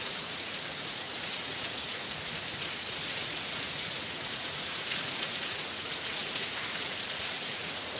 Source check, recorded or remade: remade